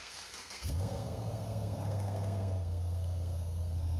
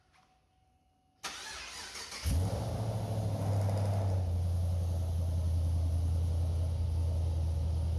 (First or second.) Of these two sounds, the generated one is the first